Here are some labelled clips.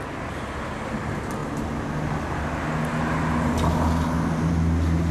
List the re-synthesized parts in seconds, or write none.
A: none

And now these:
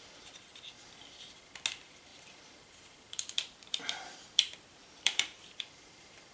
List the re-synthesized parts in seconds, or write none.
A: 2.1-6.3 (vocoder, BigVGAN v2)

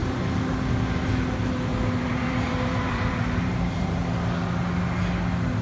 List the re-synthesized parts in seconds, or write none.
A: 1.7-4.0 (vocoder, BigVGAN v2)

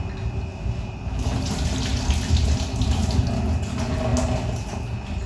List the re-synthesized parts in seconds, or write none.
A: 0.5-1.5 (vocoder, BigVGAN v2)

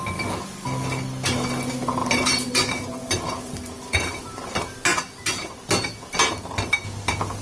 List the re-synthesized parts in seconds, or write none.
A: 2.0-4.5 (vocoder, BigVGAN v2)